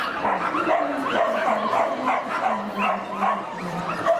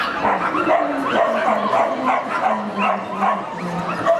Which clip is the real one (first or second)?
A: second